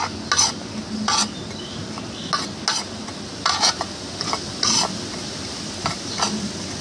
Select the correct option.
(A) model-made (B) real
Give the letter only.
B